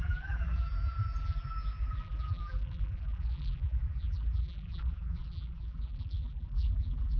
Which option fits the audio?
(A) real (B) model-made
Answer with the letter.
B